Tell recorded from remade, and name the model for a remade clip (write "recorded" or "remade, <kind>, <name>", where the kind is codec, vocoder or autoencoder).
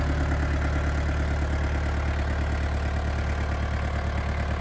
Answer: recorded